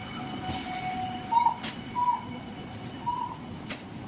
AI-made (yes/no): no